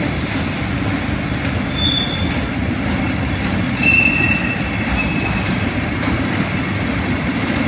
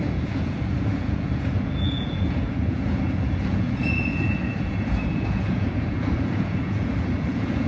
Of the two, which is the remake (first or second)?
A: second